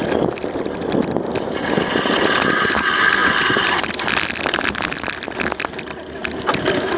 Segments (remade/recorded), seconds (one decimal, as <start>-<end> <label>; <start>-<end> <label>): 0.0-7.0 recorded